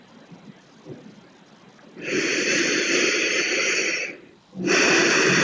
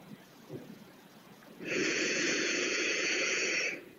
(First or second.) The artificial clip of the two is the second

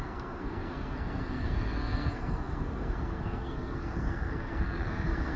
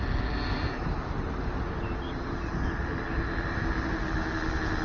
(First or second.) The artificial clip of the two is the first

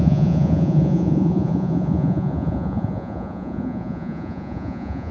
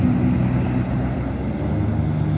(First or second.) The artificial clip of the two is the first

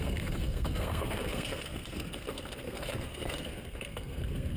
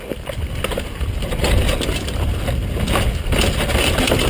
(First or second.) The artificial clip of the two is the first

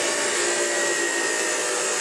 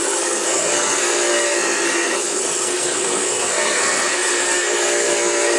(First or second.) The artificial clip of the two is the second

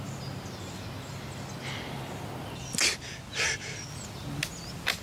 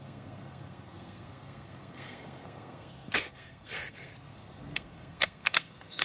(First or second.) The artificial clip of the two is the second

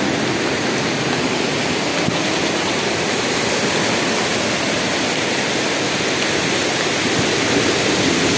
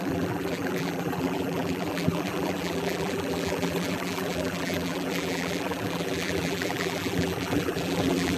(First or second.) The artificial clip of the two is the second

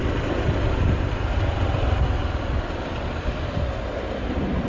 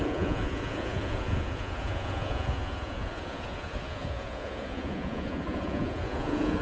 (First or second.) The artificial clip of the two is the second